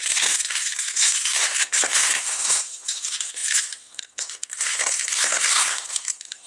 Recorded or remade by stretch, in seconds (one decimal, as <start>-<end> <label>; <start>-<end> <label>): 0.0-6.5 remade